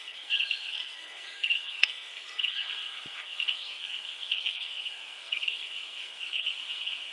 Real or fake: fake